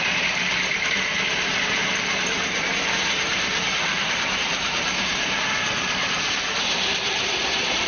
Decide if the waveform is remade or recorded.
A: remade